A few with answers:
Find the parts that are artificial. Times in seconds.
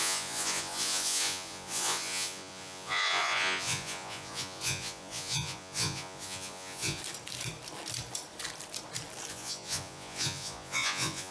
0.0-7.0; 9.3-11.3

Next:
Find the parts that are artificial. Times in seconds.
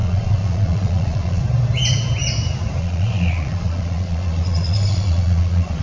0.0-1.4; 2.8-5.8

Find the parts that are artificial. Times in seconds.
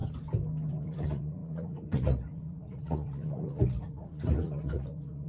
0.7-5.3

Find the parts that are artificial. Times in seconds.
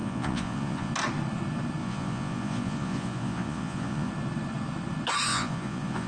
0.0-0.9; 1.8-4.1; 5.3-6.1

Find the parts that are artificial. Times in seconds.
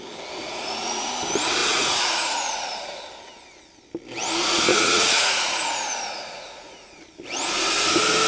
0.4-1.1; 1.6-3.0; 4.7-7.0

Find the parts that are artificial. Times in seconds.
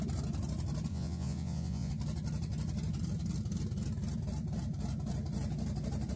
0.9-1.9